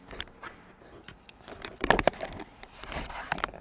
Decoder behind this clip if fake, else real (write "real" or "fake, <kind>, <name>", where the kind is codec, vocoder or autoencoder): fake, vocoder, BigVGAN v2